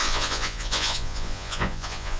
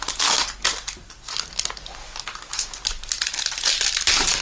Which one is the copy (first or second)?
first